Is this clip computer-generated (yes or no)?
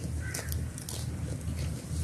no